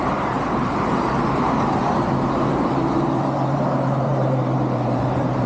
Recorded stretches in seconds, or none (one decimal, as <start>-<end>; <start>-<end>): none